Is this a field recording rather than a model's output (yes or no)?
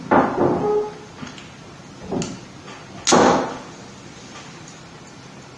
yes